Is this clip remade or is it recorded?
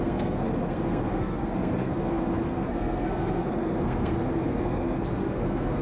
remade